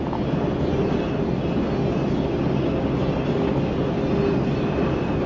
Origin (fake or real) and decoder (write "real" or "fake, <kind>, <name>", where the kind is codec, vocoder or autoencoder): real